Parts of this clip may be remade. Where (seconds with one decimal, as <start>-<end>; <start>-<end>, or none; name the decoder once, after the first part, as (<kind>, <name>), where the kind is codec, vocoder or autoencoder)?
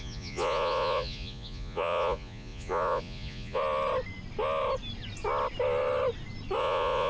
0.0-3.6 (vocoder, Vocos); 6.6-7.1